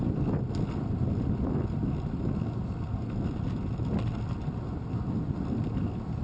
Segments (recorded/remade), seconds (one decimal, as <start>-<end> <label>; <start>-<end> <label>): 0.0-6.2 recorded